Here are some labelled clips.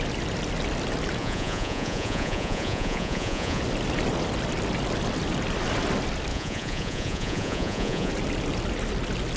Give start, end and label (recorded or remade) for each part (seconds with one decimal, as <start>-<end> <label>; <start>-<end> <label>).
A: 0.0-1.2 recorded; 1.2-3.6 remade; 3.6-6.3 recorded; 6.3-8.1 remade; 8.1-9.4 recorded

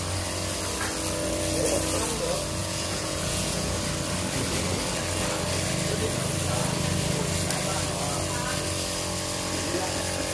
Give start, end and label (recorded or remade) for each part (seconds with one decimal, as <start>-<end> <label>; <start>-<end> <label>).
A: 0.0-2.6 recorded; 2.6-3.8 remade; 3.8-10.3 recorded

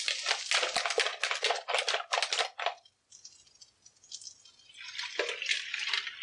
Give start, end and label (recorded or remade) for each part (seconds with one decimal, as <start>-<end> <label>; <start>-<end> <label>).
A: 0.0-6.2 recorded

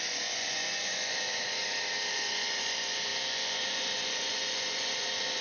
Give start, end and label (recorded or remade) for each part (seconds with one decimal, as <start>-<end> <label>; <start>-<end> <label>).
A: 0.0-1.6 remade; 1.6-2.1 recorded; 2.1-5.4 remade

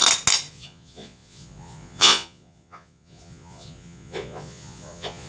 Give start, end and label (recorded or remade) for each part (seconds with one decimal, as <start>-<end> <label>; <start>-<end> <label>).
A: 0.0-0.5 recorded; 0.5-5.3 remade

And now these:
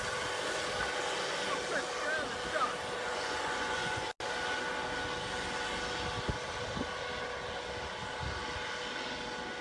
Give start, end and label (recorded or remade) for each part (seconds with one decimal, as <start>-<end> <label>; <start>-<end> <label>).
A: 0.0-3.0 recorded; 3.0-4.1 remade; 4.1-9.6 recorded

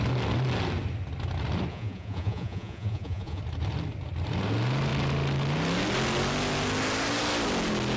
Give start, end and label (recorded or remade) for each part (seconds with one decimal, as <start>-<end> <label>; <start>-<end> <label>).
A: 0.0-1.7 recorded; 1.7-3.4 remade; 3.4-8.0 recorded